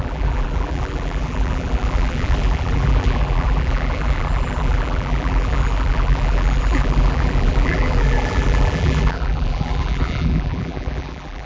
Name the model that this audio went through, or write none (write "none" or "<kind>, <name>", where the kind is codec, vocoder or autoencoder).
vocoder, BigVGAN v2